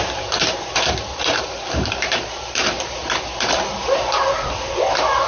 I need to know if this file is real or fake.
fake